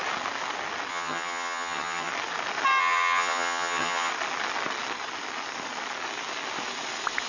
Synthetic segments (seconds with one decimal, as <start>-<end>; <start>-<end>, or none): 0.9-2.1; 2.8-4.1